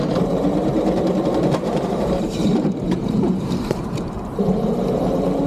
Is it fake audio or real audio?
fake